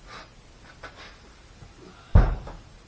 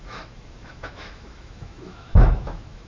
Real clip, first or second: first